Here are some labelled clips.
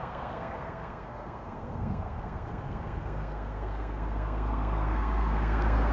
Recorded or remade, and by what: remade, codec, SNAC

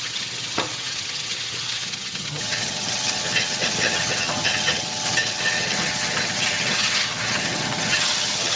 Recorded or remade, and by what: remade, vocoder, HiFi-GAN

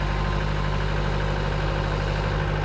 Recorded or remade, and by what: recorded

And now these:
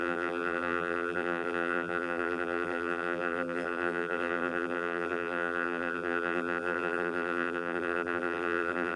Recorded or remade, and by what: remade, vocoder, BigVGAN v2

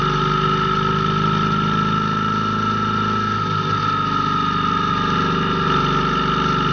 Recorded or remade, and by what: recorded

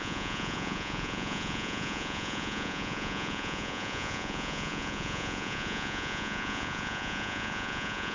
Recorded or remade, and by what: remade, vocoder, Vocos